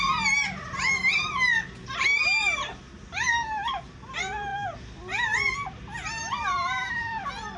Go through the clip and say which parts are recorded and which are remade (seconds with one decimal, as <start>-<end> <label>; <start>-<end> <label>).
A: 0.0-7.6 recorded